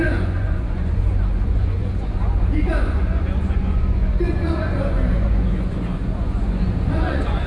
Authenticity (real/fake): fake